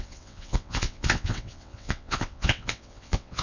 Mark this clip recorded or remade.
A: remade